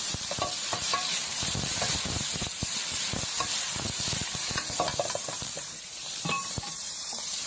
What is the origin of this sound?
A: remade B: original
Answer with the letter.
A